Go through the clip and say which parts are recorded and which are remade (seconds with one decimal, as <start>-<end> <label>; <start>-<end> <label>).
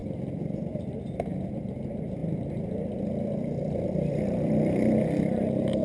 0.0-0.9 recorded; 0.9-5.8 remade